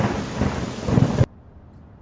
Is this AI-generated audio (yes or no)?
no